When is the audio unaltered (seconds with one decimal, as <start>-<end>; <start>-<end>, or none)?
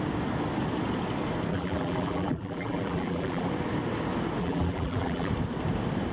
0.0-1.5; 3.5-4.4; 5.3-6.1